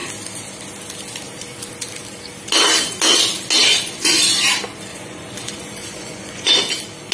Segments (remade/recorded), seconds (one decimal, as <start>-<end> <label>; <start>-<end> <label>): 0.0-3.7 recorded; 3.7-4.3 remade; 4.3-4.9 recorded; 4.9-6.5 remade; 6.5-7.1 recorded